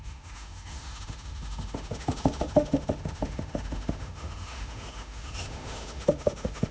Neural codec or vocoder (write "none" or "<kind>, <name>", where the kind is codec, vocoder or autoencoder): autoencoder, DAC-VAE